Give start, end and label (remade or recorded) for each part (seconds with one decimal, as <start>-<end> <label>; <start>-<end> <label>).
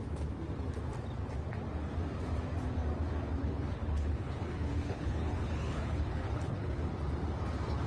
0.0-3.4 recorded; 3.4-6.9 remade; 6.9-7.9 recorded